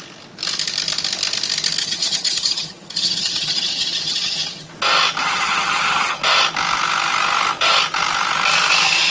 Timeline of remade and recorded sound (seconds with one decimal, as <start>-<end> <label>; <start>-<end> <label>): 0.0-1.8 recorded; 1.8-4.7 remade; 4.7-5.2 recorded; 5.2-6.2 remade; 6.2-9.1 recorded